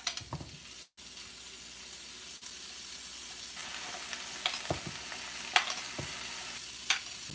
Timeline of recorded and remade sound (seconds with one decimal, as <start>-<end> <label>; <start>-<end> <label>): 0.0-7.3 recorded